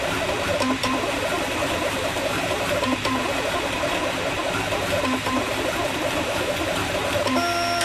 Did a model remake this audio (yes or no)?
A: yes